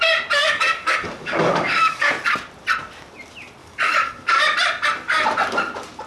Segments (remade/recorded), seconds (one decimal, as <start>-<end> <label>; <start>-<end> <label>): 0.0-0.4 recorded; 0.4-2.1 remade; 2.1-3.6 recorded; 3.6-4.3 remade; 4.3-6.1 recorded